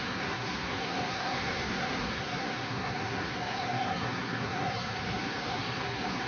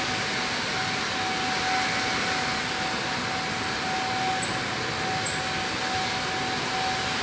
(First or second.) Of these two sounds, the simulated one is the first